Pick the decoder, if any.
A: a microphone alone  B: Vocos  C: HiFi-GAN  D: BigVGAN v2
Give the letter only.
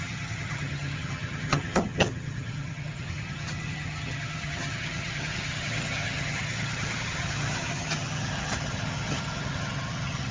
C